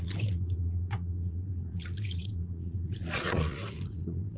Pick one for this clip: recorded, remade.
remade